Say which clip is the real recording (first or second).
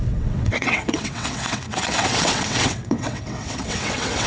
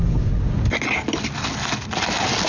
second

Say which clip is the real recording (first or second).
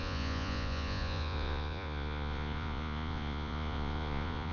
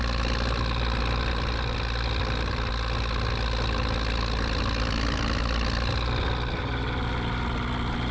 second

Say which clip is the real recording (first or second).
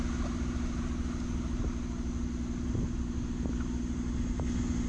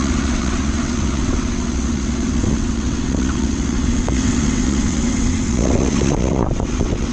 first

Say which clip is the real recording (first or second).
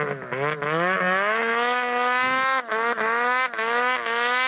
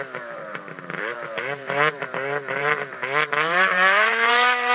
first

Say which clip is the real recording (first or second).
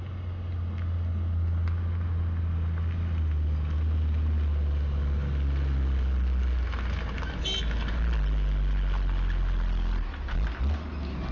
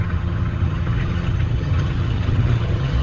first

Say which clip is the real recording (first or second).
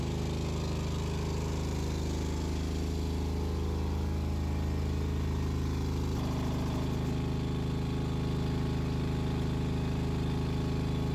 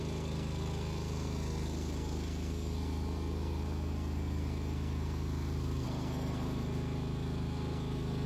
first